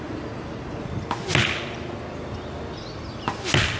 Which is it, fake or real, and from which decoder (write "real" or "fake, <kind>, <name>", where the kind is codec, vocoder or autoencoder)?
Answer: real